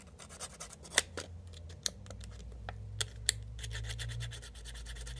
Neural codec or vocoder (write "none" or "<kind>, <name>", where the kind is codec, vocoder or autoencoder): none